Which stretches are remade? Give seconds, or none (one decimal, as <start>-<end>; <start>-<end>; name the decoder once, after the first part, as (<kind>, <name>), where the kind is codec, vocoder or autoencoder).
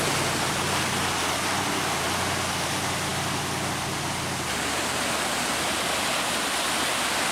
none